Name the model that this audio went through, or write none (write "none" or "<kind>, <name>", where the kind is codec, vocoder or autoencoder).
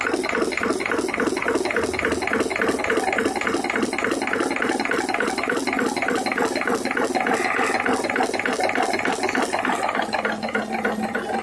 none